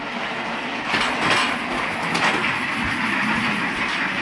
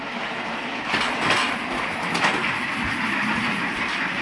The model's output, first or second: second